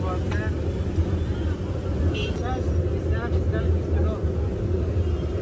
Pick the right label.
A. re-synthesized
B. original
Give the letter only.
B